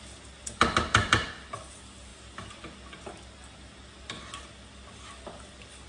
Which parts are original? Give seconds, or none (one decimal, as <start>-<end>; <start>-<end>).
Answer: 0.0-5.9